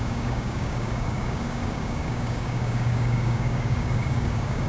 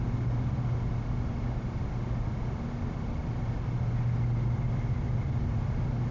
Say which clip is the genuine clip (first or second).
second